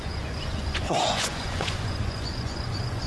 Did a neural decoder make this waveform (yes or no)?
yes